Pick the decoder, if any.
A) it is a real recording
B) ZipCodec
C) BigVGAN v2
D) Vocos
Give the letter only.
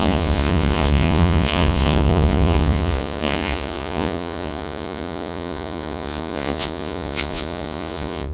D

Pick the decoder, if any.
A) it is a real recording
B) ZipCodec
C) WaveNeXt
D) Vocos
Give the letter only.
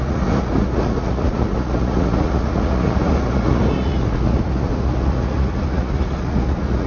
D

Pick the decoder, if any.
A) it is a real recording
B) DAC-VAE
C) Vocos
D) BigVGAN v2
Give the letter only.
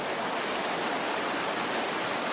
A